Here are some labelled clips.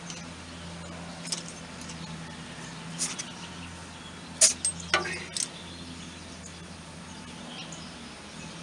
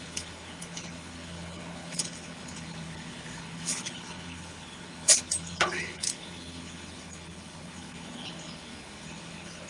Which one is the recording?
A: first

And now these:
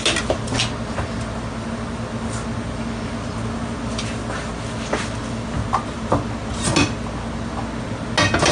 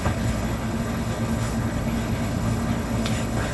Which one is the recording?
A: first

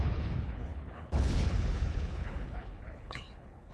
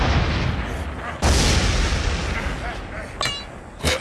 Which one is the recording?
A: second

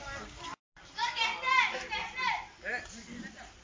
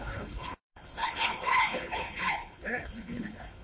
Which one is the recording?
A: first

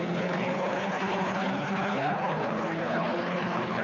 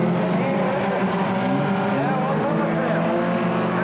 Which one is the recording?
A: second